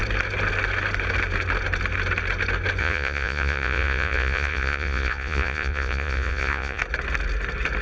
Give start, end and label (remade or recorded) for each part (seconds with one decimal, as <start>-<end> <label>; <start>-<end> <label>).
0.0-2.8 recorded; 2.8-6.8 remade; 6.8-7.8 recorded